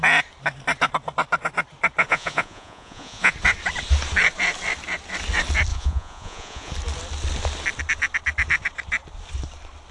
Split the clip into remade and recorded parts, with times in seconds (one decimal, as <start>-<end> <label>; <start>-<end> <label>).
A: 0.0-2.0 recorded; 2.0-3.3 remade; 3.3-5.7 recorded; 5.7-6.7 remade; 6.7-9.9 recorded